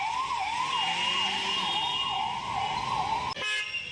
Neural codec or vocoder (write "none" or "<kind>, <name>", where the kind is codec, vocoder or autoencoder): none